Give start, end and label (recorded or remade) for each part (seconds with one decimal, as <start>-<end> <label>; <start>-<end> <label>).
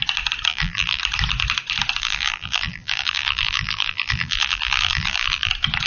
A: 0.0-0.5 recorded; 0.5-1.0 remade; 1.0-2.0 recorded; 2.0-5.5 remade; 5.5-5.9 recorded